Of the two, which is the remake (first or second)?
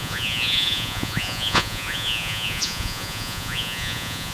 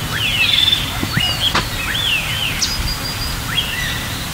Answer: first